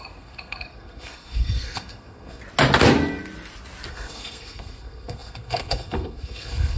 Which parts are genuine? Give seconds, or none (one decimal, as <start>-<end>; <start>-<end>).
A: 2.4-3.9